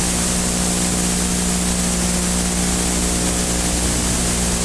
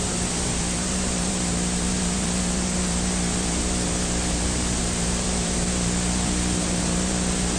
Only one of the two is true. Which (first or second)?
first